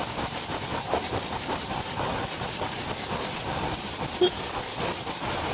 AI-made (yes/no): yes